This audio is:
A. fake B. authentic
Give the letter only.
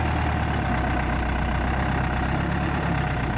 B